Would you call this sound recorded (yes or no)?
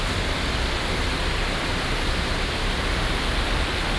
yes